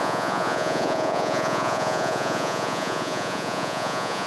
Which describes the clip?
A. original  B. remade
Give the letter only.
B